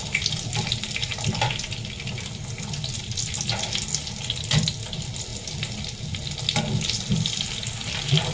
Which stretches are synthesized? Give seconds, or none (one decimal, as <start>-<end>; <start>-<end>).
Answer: none